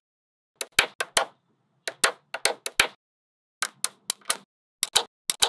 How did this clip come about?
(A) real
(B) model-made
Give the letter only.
A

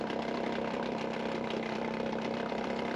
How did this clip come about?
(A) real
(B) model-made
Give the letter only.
B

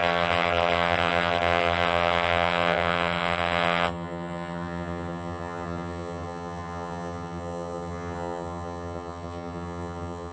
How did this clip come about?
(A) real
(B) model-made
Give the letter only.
B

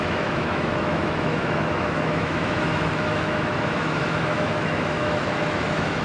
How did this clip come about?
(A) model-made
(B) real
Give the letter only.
A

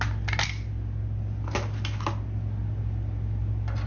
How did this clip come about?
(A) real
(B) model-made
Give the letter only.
A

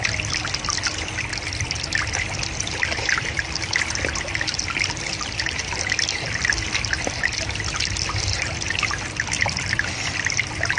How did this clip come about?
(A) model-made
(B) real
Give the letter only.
B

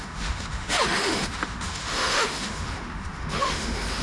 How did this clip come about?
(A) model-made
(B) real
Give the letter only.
A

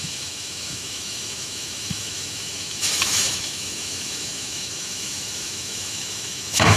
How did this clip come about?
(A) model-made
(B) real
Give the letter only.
A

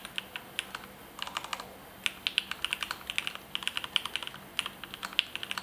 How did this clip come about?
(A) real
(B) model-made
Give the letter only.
A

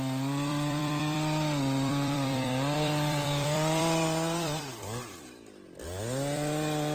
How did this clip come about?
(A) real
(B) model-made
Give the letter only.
B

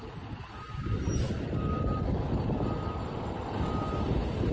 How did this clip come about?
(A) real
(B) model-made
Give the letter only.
A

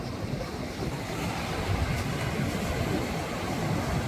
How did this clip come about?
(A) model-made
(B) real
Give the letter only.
B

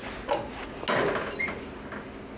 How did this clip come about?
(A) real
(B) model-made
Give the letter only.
A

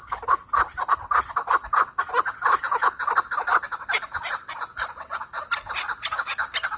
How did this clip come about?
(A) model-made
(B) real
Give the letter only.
B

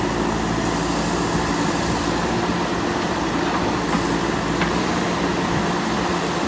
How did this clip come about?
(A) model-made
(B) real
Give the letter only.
B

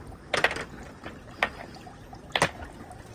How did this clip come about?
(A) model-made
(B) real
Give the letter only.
B